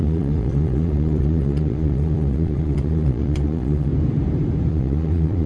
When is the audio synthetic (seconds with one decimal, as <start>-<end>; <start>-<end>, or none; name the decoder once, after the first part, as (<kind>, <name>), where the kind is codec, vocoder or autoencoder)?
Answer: 0.0-3.9 (vocoder, Vocos); 4.7-5.5